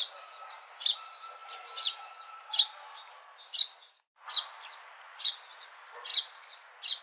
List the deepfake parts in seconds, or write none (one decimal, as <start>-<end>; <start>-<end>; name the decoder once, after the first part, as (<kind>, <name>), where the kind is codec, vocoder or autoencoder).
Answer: none